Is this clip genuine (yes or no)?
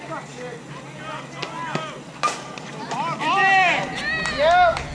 yes